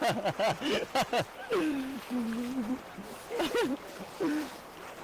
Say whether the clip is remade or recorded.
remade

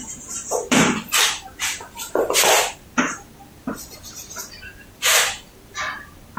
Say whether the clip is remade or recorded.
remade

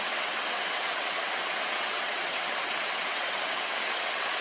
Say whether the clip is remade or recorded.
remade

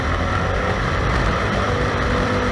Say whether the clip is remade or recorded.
remade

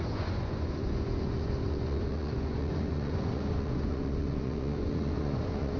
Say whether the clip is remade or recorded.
remade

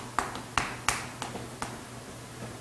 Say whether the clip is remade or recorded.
recorded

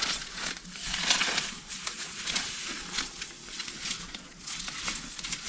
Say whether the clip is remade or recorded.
remade